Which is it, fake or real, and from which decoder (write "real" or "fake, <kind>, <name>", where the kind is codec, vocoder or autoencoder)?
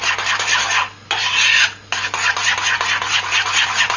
real